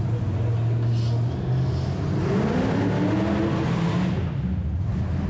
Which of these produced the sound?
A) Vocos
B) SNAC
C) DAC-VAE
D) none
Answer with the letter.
D